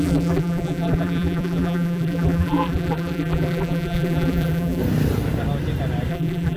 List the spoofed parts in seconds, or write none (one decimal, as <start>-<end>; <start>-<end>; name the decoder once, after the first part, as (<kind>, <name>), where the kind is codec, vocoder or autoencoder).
0.0-4.8 (vocoder, BigVGAN v2); 6.1-6.6